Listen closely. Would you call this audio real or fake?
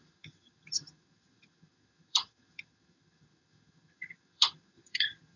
fake